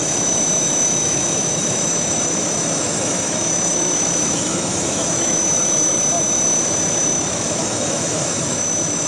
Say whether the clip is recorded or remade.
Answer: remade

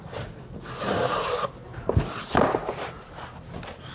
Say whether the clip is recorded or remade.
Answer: recorded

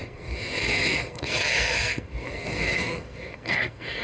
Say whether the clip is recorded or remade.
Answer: remade